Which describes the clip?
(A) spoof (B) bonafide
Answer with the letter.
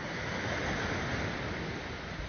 B